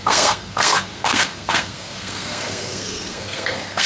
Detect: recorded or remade remade